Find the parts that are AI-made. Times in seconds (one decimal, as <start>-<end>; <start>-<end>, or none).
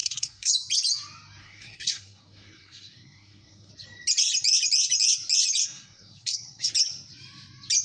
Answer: 0.0-0.5; 1.4-3.7; 5.6-6.7